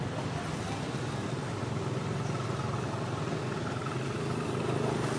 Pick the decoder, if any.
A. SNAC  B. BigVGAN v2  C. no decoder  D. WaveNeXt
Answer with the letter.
C